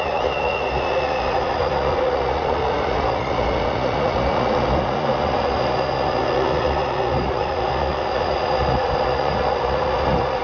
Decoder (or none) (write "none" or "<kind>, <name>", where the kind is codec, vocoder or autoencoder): vocoder, Vocos